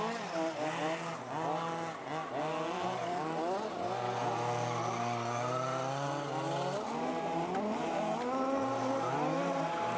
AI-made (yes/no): no